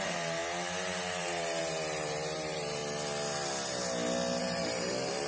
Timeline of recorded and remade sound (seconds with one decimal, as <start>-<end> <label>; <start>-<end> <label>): 0.0-2.8 remade; 2.8-4.4 recorded; 4.4-5.3 remade